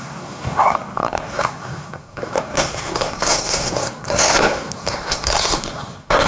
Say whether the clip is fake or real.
fake